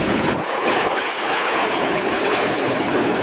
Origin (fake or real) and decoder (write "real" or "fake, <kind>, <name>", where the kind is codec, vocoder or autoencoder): fake, codec, HILCodec